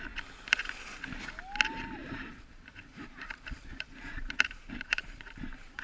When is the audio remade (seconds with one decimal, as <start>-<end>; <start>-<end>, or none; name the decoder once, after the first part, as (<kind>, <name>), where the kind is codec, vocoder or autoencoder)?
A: 2.0-5.8 (vocoder, BigVGAN v2)